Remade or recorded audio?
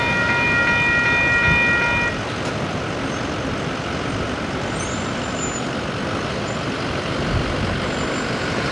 recorded